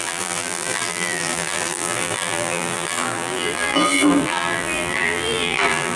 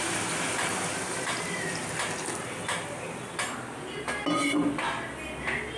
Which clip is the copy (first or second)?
first